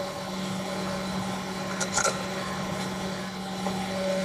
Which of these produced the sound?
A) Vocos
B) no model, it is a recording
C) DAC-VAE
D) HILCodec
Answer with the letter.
D